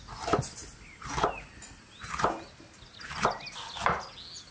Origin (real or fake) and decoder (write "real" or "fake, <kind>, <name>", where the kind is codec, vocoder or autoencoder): real